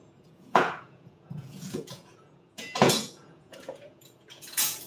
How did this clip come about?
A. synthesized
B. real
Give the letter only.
A